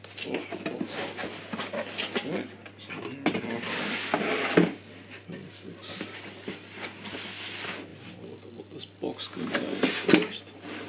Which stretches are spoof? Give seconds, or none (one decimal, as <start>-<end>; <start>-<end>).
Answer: none